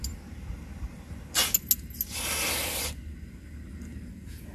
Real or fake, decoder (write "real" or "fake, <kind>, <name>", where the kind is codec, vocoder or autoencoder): real